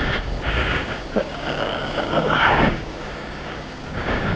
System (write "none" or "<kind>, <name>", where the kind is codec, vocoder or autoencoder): codec, DAC